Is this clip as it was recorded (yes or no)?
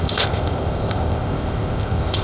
no